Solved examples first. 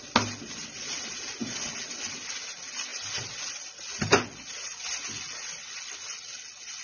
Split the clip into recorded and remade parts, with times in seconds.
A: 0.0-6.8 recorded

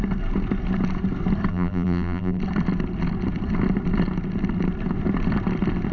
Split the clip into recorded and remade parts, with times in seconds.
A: 0.0-1.5 recorded; 1.5-2.4 remade; 2.4-5.9 recorded

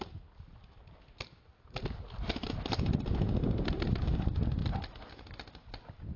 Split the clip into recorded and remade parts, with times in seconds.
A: 0.0-6.2 recorded